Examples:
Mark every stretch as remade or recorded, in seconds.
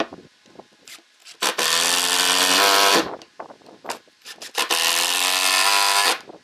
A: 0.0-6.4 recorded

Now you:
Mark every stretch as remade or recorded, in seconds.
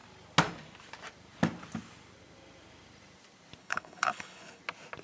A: 0.0-3.6 recorded; 3.6-4.6 remade; 4.6-5.0 recorded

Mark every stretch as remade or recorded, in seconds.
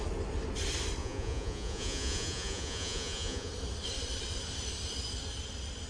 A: 0.0-1.0 recorded; 1.0-3.5 remade; 3.5-5.9 recorded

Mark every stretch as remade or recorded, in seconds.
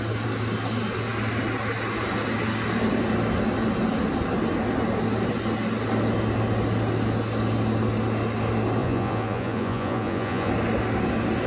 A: 0.0-8.8 recorded; 8.8-10.5 remade; 10.5-11.5 recorded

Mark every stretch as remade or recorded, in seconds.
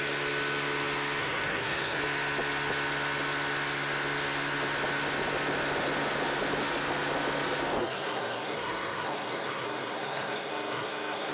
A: 0.0-1.2 recorded; 1.2-2.0 remade; 2.0-7.8 recorded; 7.8-11.3 remade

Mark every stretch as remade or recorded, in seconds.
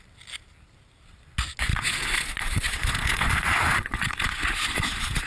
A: 0.0-1.7 recorded; 1.7-5.3 remade